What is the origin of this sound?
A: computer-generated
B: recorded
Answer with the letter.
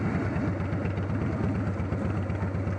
B